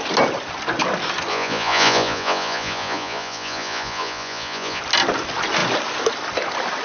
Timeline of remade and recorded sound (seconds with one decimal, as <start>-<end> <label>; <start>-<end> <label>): 0.0-1.3 recorded; 1.3-4.8 remade; 4.8-6.8 recorded